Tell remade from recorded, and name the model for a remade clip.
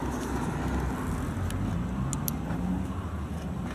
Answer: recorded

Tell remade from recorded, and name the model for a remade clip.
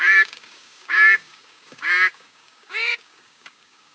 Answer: remade, codec, DAC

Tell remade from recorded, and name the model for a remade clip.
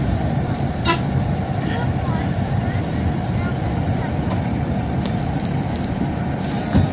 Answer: remade, vocoder, BigVGAN v2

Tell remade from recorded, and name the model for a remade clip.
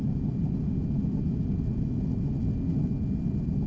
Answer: recorded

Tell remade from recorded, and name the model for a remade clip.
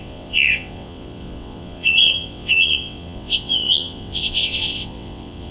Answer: remade, vocoder, WaveNeXt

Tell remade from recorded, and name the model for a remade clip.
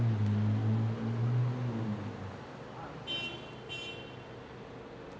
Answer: recorded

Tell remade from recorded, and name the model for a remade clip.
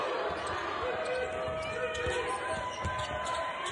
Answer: recorded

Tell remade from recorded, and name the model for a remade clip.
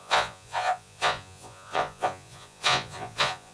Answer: remade, vocoder, Vocos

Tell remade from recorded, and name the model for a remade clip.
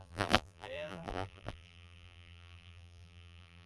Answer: remade, vocoder, BigVGAN v2